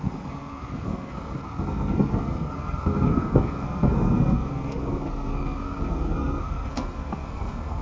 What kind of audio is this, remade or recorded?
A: remade